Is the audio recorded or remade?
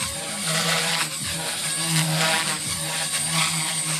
remade